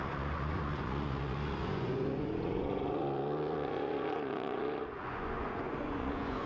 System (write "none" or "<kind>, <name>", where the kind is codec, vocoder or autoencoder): vocoder, Vocos